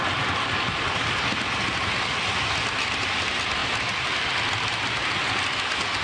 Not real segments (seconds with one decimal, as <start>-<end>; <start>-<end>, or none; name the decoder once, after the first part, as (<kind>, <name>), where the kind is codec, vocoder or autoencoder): none

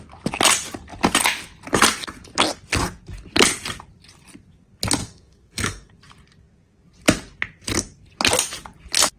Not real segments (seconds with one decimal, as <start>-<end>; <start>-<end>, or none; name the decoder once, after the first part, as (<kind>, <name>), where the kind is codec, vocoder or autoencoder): 5.0-5.9 (codec, SNAC)

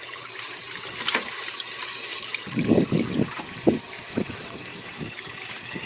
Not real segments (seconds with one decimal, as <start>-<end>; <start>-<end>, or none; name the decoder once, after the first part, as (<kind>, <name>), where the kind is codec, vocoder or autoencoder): 0.0-2.1 (vocoder, BigVGAN v2); 3.4-5.9

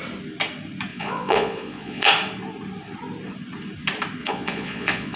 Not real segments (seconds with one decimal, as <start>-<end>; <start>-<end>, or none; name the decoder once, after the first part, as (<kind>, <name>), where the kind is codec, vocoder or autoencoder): 0.9-2.1 (vocoder, Vocos); 4.2-5.2

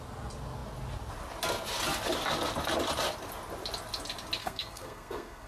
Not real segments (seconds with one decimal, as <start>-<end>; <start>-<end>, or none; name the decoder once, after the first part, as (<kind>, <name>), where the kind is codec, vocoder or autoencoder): 4.4-5.5 (codec, SNAC)

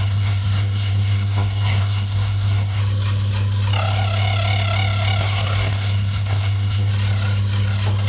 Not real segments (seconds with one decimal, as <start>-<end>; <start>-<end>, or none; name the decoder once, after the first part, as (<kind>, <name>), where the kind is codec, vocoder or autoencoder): 0.0-2.8 (codec, SNAC); 5.2-6.9

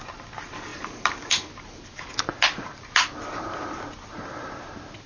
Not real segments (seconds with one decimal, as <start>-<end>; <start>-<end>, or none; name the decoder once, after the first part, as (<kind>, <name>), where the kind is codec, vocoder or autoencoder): none